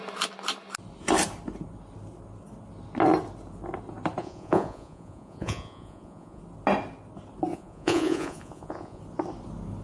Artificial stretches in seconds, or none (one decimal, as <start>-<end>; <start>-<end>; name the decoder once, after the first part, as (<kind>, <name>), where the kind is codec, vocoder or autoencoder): 4.2-6.4 (vocoder, Vocos); 7.5-9.0